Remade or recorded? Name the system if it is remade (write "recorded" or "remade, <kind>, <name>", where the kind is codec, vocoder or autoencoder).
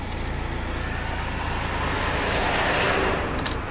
recorded